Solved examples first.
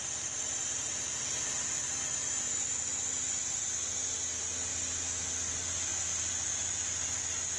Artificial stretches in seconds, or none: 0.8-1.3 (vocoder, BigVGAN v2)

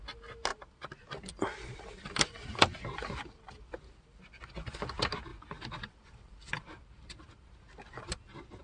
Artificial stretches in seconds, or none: 0.5-4.4 (vocoder, BigVGAN v2); 5.3-8.6

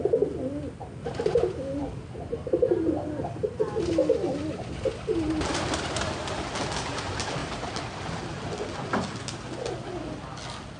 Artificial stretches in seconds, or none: 1.8-3.5 (vocoder, BigVGAN v2); 7.4-8.0

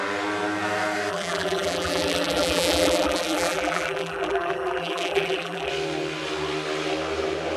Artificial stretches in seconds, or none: 1.1-5.7 (vocoder, BigVGAN v2)

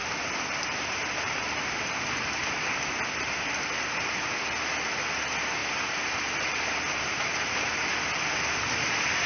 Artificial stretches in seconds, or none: 0.0-1.4 (vocoder, BigVGAN v2); 2.4-2.9; 5.6-6.6

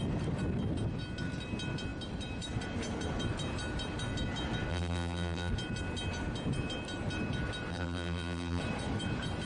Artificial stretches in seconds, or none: 4.7-5.5 (vocoder, BigVGAN v2); 7.7-8.6

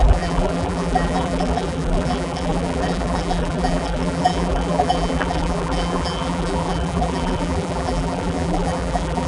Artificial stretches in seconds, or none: 0.0-9.3 (vocoder, BigVGAN v2)